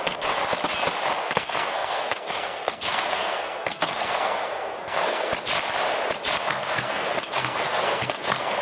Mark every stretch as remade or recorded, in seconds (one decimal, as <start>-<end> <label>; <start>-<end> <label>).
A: 0.0-0.4 remade; 0.4-1.2 recorded; 1.2-5.3 remade; 5.3-6.4 recorded; 6.4-8.6 remade